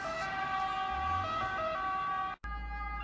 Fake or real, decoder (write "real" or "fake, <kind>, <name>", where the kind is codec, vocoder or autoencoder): real